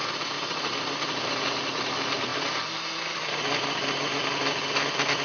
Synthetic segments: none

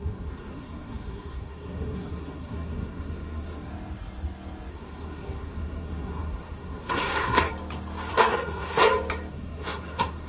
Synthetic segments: 0.0-3.7 (codec, SNAC); 4.7-7.5; 8.1-8.8; 9.3-10.3